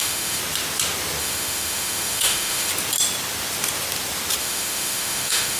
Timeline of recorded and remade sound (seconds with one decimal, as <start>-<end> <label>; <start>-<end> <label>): 0.0-0.4 remade; 0.4-1.2 recorded; 1.2-2.7 remade; 2.7-4.4 recorded; 4.4-5.6 remade